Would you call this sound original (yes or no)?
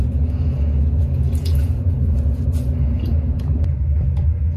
no